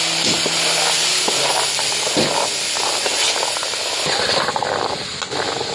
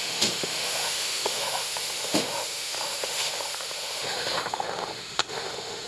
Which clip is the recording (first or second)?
first